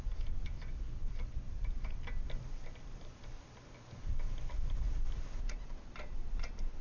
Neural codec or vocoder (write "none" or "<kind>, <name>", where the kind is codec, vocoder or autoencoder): none